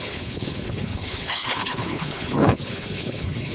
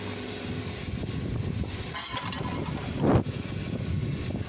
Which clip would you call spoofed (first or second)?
first